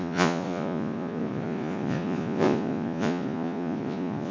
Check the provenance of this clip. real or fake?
fake